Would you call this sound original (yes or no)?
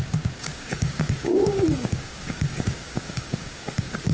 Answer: no